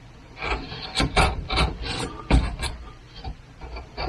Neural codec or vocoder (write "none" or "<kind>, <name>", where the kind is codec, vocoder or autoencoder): none